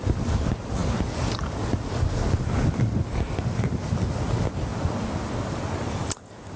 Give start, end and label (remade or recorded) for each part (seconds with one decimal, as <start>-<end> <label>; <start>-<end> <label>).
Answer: 0.0-6.6 recorded